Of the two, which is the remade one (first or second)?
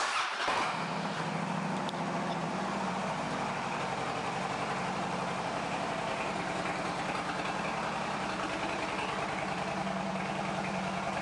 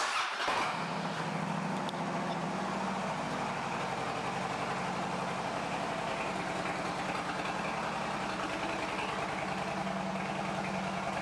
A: first